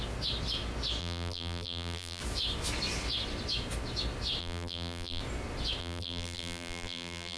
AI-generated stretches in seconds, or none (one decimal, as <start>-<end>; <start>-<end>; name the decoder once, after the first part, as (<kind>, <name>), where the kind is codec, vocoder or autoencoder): 1.0-2.2 (vocoder, BigVGAN v2); 4.4-5.2; 5.8-7.4